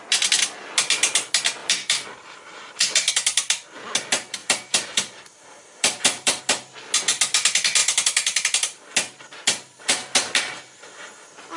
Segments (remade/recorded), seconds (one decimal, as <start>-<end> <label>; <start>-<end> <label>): 0.0-1.6 recorded; 1.6-3.1 remade; 3.1-4.4 recorded; 4.4-6.4 remade; 6.4-11.6 recorded